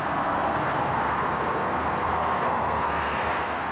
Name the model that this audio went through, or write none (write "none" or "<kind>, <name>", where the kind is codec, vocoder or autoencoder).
codec, SNAC